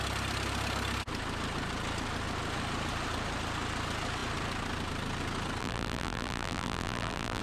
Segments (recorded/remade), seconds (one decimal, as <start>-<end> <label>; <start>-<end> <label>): 0.0-5.6 recorded; 5.6-7.4 remade